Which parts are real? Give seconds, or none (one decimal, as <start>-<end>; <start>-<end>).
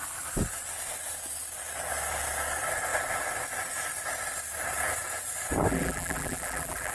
0.0-5.7